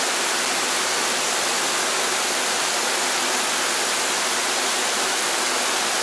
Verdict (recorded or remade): recorded